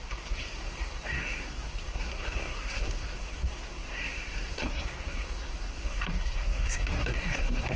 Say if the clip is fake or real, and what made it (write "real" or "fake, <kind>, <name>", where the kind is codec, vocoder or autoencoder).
fake, codec, SNAC